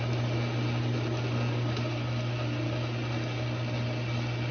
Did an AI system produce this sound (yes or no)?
no